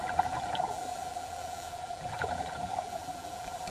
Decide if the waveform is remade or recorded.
remade